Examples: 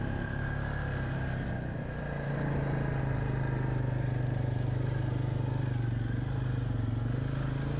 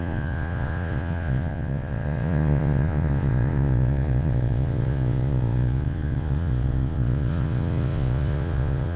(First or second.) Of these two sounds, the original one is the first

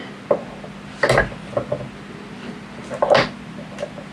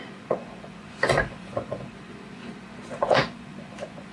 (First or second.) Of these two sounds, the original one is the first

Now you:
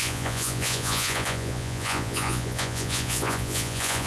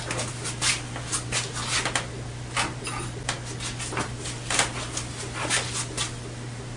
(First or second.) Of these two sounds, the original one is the second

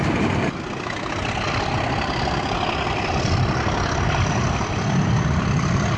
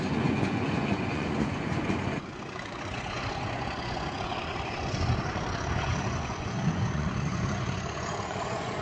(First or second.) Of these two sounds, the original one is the first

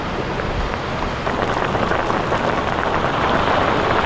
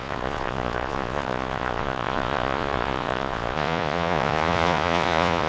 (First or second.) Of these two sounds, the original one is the first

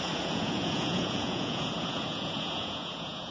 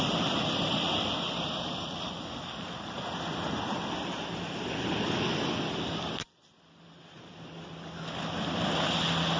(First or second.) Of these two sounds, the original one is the second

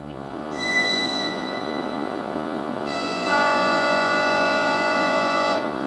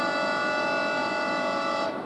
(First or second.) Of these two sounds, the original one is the second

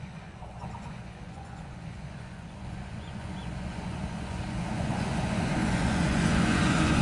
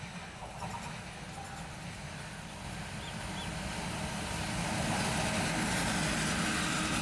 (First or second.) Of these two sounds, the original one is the second